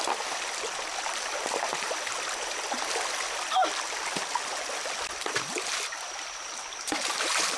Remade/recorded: recorded